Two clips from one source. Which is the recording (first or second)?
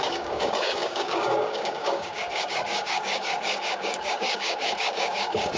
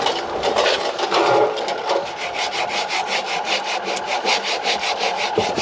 second